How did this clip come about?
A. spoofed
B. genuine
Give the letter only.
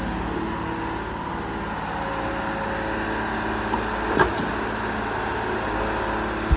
B